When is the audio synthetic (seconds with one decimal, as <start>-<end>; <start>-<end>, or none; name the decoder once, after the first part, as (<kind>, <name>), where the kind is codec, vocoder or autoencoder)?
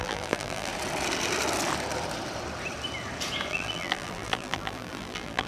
0.0-0.7 (vocoder, BigVGAN v2); 3.5-5.5